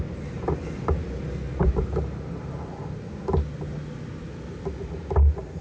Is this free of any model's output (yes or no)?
yes